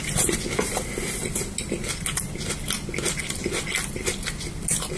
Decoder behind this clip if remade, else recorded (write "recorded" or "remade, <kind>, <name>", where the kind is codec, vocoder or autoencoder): recorded